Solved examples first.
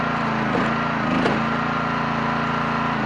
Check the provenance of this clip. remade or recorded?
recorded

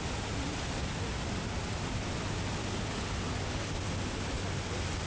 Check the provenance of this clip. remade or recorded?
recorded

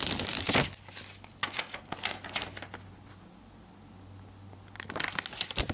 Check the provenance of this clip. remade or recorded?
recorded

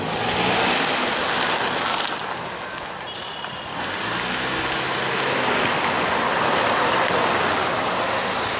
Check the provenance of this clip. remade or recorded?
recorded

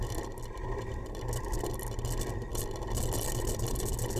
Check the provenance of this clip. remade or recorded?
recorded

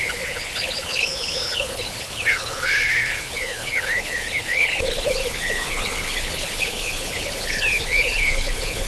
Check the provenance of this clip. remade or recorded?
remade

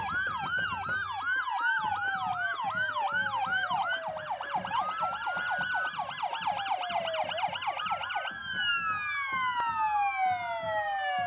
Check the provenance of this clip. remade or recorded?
recorded